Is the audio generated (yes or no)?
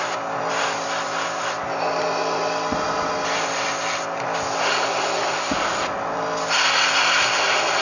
no